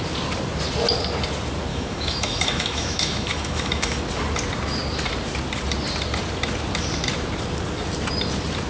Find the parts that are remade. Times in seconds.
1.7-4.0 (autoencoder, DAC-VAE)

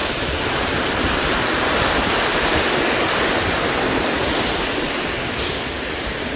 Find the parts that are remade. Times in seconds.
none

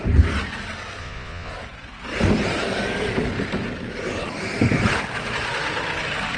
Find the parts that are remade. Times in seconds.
1.0-1.5 (vocoder, Vocos)